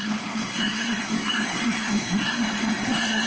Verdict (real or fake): fake